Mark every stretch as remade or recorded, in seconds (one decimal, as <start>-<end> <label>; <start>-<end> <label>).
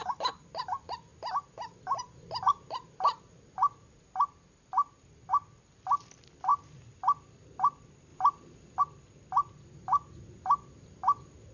0.0-11.5 recorded